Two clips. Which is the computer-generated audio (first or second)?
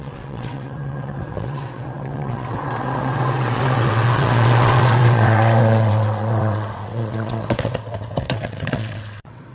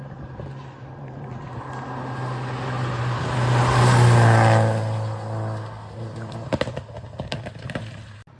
first